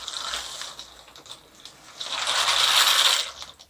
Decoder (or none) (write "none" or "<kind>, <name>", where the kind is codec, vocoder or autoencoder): none